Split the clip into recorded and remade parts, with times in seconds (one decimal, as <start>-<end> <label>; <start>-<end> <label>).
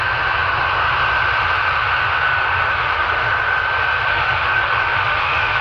0.0-2.7 recorded; 2.7-3.3 remade; 3.3-4.1 recorded; 4.1-5.6 remade